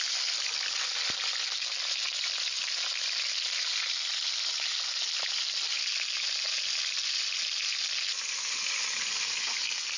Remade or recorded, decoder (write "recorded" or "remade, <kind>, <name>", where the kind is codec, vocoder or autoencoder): recorded